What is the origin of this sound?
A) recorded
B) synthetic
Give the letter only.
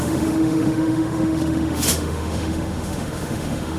B